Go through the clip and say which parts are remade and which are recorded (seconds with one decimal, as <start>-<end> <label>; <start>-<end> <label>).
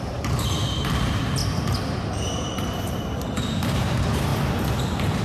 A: 0.0-1.4 remade; 1.4-2.4 recorded; 2.4-4.3 remade; 4.3-4.8 recorded; 4.8-5.2 remade